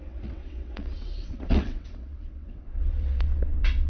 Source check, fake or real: fake